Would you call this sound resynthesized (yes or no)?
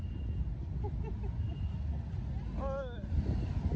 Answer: no